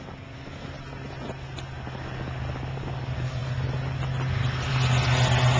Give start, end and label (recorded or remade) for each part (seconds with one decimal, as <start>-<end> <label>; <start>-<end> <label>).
0.0-5.6 recorded